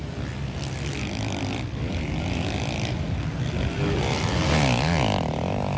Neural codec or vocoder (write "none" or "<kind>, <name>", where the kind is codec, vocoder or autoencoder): none